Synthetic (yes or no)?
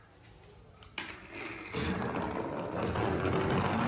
no